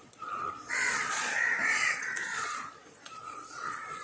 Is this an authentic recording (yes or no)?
no